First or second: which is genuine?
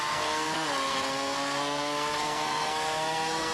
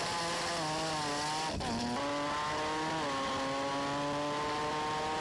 second